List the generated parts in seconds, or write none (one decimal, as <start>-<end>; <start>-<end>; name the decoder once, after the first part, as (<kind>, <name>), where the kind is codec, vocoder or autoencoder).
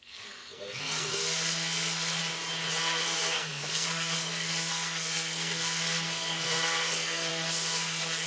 0.0-2.2 (codec, SNAC); 2.8-8.3